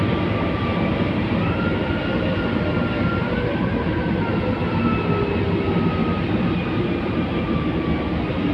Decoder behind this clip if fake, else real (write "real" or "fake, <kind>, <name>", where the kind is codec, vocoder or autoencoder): real